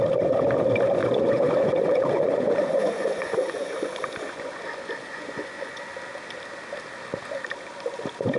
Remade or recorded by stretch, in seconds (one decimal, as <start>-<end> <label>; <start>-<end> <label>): 0.0-1.0 recorded; 1.0-4.6 remade; 4.6-5.0 recorded; 5.0-5.8 remade; 5.8-8.4 recorded